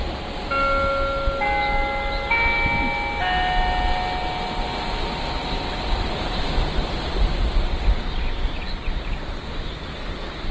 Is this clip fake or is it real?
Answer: real